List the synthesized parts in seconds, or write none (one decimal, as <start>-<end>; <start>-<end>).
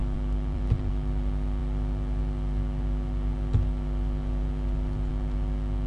0.0-0.9